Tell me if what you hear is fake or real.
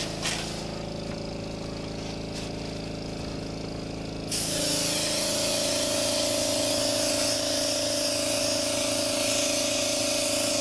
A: real